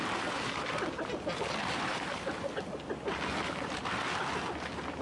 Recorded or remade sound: recorded